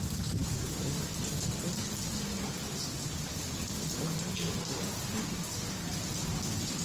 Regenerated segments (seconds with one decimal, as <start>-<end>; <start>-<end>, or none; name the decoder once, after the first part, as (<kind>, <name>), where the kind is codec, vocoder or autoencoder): none